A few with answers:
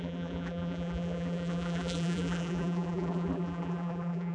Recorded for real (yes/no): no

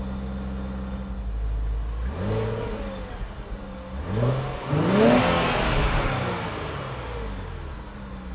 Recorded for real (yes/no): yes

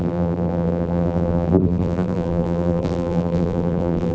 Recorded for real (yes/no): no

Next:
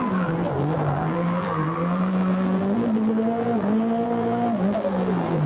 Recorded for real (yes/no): no